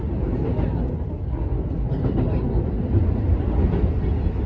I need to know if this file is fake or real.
real